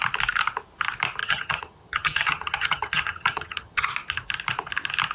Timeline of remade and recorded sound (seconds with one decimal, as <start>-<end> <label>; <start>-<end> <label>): 0.0-1.2 recorded; 1.2-3.9 remade; 3.9-5.1 recorded